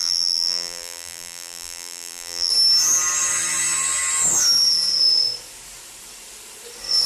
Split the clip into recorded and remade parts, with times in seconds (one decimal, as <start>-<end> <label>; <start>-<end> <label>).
0.0-2.5 remade; 2.5-7.1 recorded